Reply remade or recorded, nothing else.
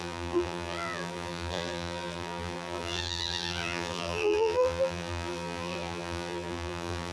remade